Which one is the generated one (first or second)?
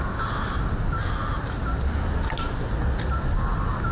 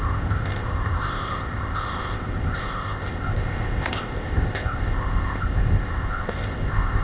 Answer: second